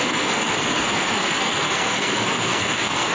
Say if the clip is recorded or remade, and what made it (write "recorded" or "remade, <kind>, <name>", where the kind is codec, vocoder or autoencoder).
remade, codec, SNAC